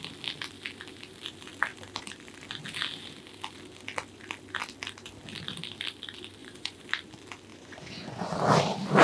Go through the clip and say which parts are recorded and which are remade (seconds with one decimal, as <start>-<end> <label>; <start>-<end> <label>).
0.0-6.4 recorded; 6.4-6.9 remade; 6.9-7.5 recorded; 7.5-8.3 remade; 8.3-9.0 recorded